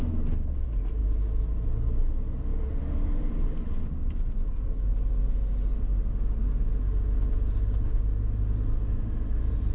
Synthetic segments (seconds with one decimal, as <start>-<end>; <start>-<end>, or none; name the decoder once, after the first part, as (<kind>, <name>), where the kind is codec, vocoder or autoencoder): none